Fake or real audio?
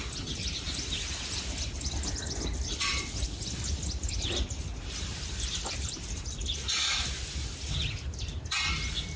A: fake